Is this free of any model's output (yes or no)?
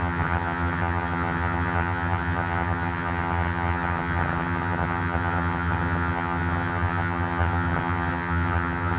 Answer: no